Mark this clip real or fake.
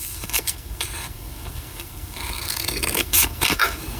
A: fake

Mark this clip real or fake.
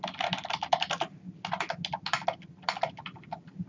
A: real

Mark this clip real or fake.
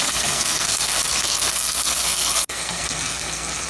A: fake